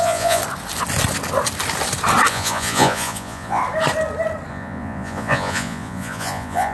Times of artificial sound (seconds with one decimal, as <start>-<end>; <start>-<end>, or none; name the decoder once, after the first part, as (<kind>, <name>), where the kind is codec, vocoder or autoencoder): 0.0-0.4 (vocoder, Vocos); 2.3-3.6; 4.5-6.7